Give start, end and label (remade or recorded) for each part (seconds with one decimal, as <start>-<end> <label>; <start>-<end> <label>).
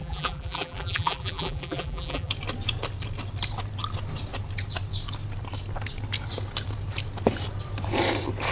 0.0-2.3 remade; 2.3-8.5 recorded